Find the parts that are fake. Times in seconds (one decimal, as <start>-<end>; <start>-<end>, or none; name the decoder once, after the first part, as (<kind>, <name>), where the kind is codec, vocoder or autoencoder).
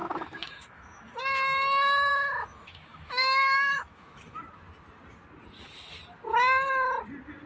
0.0-1.2 (autoencoder, DAC-VAE); 2.1-4.4